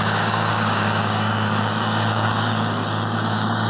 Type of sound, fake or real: fake